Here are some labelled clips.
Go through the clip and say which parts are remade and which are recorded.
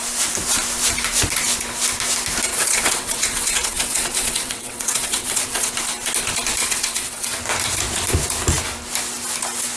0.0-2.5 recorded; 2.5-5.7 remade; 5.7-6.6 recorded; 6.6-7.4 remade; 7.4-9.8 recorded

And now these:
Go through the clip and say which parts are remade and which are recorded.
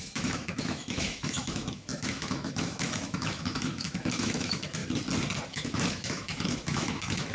0.0-4.8 remade; 4.8-5.5 recorded; 5.5-7.3 remade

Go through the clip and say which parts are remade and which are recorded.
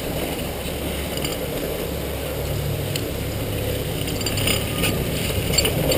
0.0-6.0 recorded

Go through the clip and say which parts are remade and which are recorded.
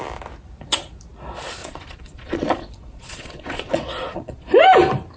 0.0-1.6 recorded; 1.6-4.6 remade; 4.6-5.2 recorded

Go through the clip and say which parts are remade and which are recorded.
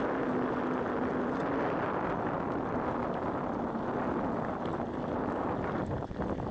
0.0-6.5 recorded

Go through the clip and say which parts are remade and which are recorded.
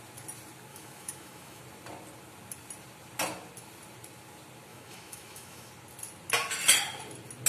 0.0-0.7 recorded; 0.7-1.6 remade; 1.6-4.7 recorded; 4.7-5.7 remade; 5.7-7.5 recorded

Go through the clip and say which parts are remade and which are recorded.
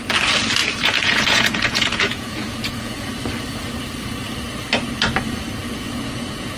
0.0-0.6 recorded; 0.6-3.1 remade; 3.1-5.6 recorded; 5.6-6.6 remade